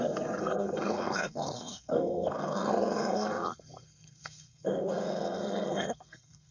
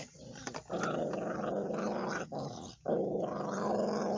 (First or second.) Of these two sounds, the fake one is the first